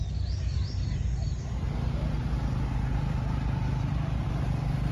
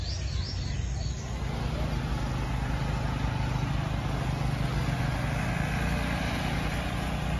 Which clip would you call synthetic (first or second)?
first